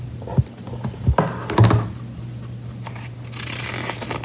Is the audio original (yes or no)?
yes